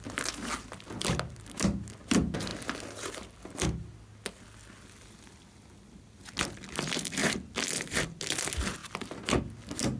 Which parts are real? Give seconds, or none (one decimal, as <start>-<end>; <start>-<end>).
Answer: 0.0-10.0